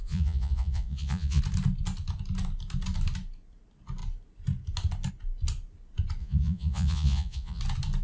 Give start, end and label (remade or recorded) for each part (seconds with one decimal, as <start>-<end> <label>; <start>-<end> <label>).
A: 0.0-1.4 remade; 1.4-6.2 recorded; 6.2-7.6 remade; 7.6-8.0 recorded